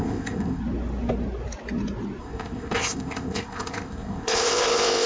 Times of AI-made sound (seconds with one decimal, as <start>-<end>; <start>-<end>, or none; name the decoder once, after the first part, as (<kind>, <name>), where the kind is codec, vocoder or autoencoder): 0.0-0.6 (codec, ZipCodec); 2.2-5.1

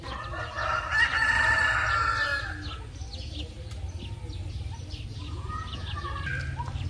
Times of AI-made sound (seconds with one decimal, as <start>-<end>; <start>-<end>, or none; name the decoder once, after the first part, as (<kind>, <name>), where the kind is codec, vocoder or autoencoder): 5.1-5.9 (vocoder, Vocos)

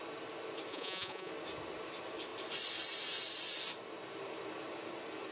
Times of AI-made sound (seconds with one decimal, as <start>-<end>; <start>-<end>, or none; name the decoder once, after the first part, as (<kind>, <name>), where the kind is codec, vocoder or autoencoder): 0.7-1.3 (vocoder, Vocos)

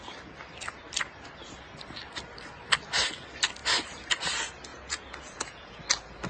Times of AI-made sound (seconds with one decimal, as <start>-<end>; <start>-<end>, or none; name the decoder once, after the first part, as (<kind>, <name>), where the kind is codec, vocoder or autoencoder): 4.7-5.8 (vocoder, Vocos)

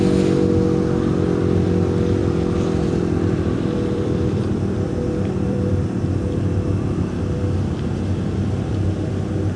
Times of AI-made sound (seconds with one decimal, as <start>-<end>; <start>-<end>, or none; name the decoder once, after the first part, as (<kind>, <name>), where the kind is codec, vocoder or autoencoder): 2.2-6.0 (vocoder, BigVGAN v2)